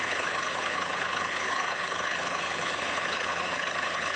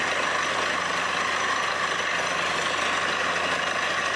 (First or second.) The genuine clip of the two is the second